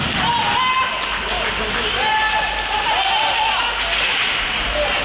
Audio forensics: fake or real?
real